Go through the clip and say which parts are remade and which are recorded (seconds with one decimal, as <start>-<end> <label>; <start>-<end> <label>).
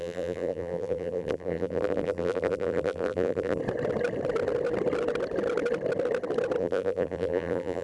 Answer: 0.0-3.6 remade; 3.6-6.6 recorded; 6.6-7.8 remade